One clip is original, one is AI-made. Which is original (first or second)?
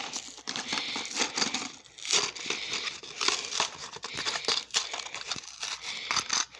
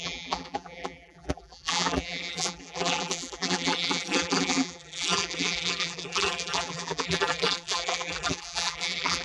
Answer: first